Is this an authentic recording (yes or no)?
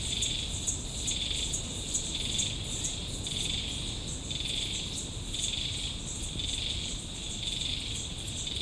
yes